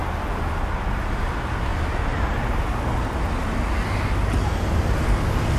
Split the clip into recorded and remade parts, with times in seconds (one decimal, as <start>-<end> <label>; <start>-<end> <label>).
0.0-5.6 recorded